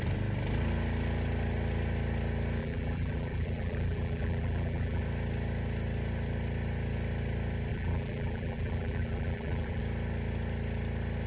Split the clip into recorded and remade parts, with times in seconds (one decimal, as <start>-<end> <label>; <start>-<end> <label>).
0.0-2.6 recorded; 2.6-5.0 remade; 5.0-7.7 recorded; 7.7-9.8 remade; 9.8-11.3 recorded